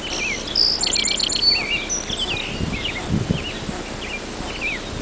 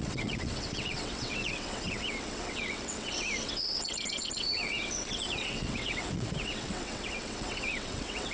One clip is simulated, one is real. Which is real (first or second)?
first